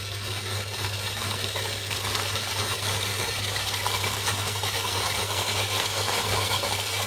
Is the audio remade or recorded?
remade